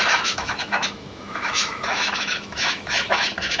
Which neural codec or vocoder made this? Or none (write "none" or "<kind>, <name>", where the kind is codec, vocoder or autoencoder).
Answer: autoencoder, DAC-VAE